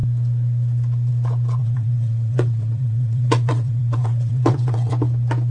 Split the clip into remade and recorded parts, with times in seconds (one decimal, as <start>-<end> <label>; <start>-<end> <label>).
0.0-1.6 recorded; 1.6-4.9 remade; 4.9-5.5 recorded